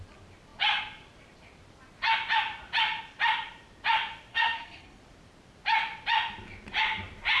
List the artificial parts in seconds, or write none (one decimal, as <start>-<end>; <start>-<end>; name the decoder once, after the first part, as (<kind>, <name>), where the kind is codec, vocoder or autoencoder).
4.3-5.0 (codec, SNAC)